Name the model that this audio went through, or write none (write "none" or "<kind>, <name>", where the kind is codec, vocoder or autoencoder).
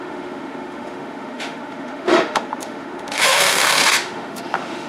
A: autoencoder, DAC-VAE